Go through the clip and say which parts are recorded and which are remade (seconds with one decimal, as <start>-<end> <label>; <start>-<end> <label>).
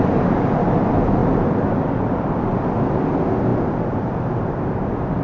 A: 0.0-5.2 recorded